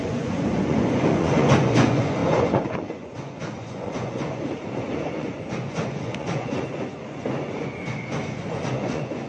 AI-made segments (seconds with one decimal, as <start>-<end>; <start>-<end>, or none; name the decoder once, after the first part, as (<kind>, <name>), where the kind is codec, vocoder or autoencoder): 0.0-9.3 (vocoder, Vocos)

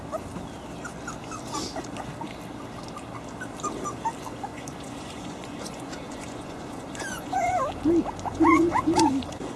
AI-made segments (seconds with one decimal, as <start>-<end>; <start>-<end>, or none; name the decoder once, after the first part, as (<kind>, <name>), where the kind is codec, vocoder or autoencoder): 4.5-7.6 (vocoder, Vocos); 8.3-9.1

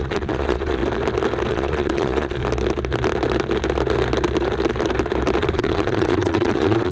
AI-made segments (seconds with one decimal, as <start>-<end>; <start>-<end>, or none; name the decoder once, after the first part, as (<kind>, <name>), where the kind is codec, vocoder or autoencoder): 0.0-0.8 (vocoder, Vocos); 1.5-2.4; 5.4-6.9

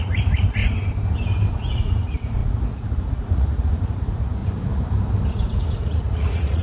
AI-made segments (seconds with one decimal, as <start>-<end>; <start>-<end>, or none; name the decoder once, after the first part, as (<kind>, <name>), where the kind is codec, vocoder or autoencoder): 0.0-0.6 (vocoder, Vocos); 1.5-4.4; 5.3-6.6

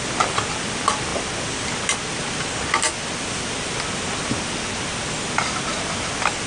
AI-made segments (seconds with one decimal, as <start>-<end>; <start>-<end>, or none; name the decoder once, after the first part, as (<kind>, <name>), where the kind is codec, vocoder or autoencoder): none

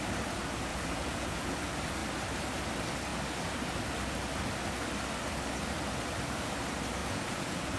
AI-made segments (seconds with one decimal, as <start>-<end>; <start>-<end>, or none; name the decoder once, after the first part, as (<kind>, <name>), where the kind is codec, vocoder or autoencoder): 0.7-1.6 (vocoder, Vocos); 7.0-7.8

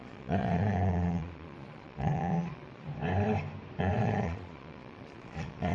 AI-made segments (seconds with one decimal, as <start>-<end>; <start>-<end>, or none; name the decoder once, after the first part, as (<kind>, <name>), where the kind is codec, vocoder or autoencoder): 0.0-2.9 (vocoder, Vocos); 3.8-5.7

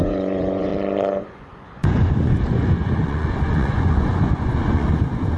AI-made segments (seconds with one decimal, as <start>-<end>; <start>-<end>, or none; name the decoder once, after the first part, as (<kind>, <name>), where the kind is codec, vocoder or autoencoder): 0.0-0.7 (vocoder, Vocos); 1.2-5.4